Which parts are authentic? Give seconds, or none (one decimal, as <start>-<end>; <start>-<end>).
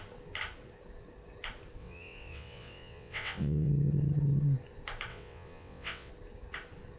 0.0-1.8; 3.7-5.1; 6.1-7.0